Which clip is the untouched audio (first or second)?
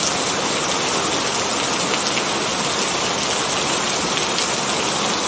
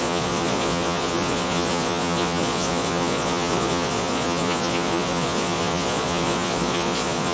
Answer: first